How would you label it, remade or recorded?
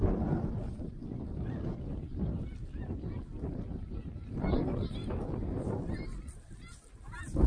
recorded